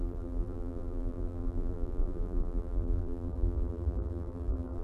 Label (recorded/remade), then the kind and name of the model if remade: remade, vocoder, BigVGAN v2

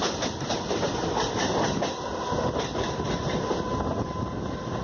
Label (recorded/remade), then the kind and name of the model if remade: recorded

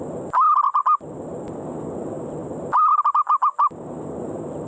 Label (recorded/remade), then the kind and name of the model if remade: recorded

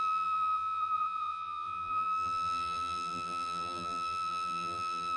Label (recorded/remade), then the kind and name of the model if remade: remade, vocoder, BigVGAN v2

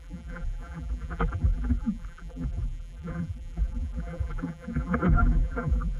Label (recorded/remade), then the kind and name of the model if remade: remade, vocoder, BigVGAN v2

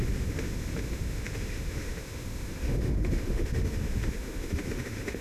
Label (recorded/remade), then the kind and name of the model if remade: remade, autoencoder, DAC-VAE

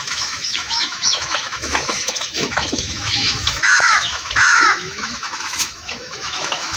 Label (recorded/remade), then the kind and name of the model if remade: remade, autoencoder, DAC-VAE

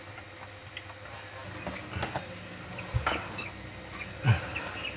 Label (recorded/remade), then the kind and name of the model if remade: recorded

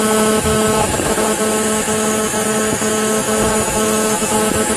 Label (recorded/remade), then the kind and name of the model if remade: remade, autoencoder, DAC-VAE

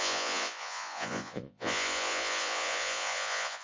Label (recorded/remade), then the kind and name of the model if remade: remade, vocoder, Vocos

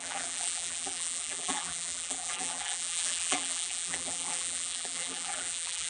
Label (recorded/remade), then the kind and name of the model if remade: remade, vocoder, BigVGAN v2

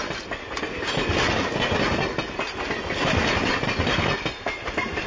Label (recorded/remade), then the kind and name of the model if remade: recorded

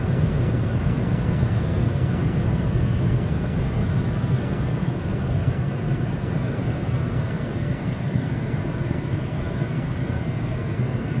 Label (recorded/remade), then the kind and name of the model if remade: remade, codec, SNAC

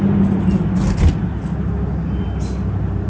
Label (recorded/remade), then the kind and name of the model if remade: recorded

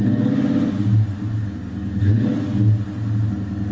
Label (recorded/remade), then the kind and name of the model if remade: recorded